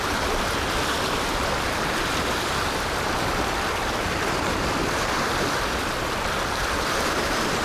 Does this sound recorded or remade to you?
remade